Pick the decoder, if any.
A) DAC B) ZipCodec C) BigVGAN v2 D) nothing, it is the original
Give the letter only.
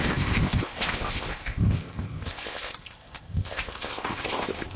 B